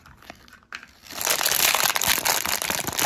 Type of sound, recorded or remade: remade